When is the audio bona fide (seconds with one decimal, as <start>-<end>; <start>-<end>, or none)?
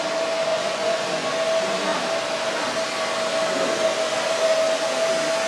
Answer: 0.0-0.5; 1.3-5.5